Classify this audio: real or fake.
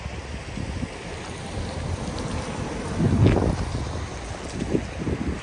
real